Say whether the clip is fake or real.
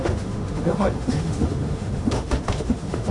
fake